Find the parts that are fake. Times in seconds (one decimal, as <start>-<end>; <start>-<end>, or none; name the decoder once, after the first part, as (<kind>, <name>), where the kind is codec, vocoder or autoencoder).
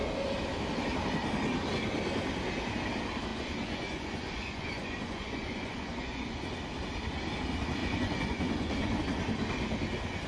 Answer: 3.3-6.6 (vocoder, Vocos); 7.8-9.0